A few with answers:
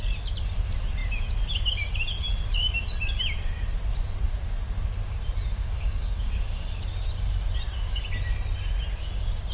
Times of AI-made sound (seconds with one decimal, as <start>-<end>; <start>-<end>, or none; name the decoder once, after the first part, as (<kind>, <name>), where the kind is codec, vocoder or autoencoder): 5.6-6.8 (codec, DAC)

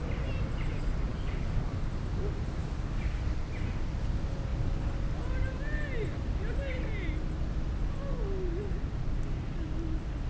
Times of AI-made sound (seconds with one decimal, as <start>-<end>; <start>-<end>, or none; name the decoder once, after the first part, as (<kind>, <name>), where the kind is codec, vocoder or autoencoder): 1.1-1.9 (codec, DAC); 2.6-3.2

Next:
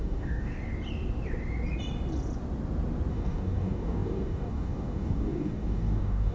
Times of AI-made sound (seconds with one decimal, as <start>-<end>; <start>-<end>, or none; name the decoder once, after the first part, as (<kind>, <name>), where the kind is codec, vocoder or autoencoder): 0.0-0.5 (codec, DAC); 3.1-6.3

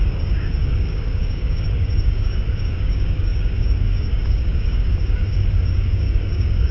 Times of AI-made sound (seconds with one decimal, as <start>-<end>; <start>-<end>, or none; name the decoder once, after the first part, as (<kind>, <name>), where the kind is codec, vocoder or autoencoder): 0.0-6.7 (codec, DAC)